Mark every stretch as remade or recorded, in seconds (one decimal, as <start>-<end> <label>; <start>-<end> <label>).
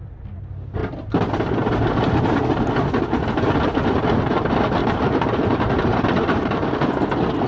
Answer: 0.0-4.8 recorded; 4.8-6.7 remade; 6.7-7.5 recorded